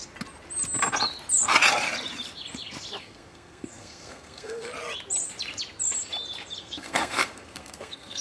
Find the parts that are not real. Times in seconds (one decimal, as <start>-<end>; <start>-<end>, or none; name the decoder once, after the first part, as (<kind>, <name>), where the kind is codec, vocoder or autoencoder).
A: 3.0-4.7 (codec, SNAC); 6.6-8.2